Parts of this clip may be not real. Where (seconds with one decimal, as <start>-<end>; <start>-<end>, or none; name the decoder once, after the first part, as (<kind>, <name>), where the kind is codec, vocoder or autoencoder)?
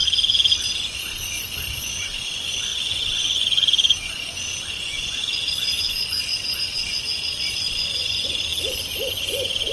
0.8-8.5 (vocoder, Vocos); 9.1-9.7